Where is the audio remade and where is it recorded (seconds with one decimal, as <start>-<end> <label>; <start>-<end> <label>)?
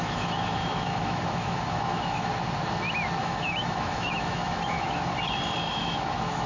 0.0-2.3 remade; 2.3-3.2 recorded; 3.2-5.1 remade; 5.1-5.7 recorded; 5.7-6.5 remade